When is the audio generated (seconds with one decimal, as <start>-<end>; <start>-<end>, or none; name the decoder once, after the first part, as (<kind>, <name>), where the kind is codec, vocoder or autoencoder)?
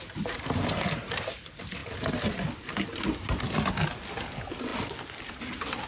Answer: none